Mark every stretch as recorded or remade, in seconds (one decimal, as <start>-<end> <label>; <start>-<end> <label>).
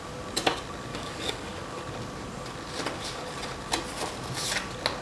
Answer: 0.0-0.9 recorded; 0.9-1.8 remade; 1.8-5.0 recorded